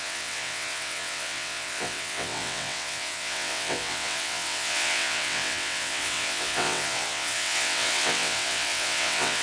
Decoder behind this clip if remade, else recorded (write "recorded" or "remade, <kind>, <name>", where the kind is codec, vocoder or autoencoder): remade, vocoder, WaveNeXt